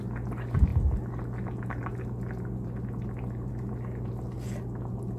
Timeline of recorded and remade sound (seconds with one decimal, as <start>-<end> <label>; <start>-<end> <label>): 0.0-5.2 recorded